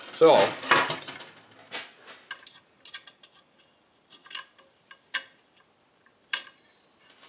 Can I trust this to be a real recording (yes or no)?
yes